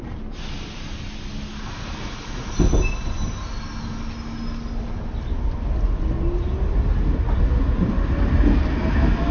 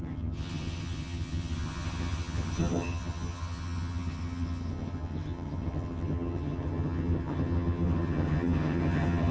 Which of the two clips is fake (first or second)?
second